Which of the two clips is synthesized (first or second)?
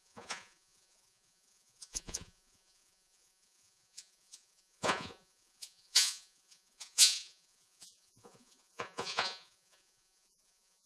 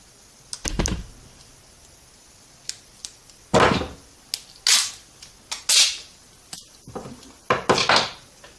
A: first